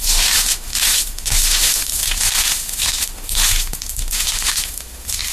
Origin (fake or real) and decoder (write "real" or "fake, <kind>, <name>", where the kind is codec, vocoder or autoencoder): fake, autoencoder, DAC-VAE